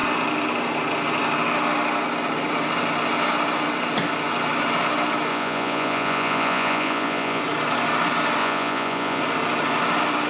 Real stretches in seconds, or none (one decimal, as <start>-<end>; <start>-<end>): 0.0-5.3; 7.4-8.4; 9.2-10.3